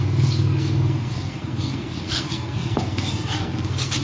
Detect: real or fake fake